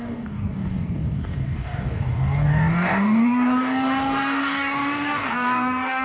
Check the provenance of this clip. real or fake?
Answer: fake